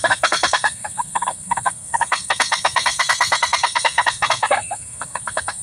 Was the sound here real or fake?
fake